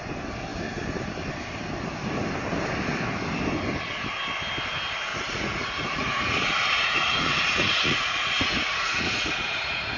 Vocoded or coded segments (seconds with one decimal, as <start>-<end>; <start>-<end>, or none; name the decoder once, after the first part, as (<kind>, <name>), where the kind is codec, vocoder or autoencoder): 5.1-10.0 (vocoder, Vocos)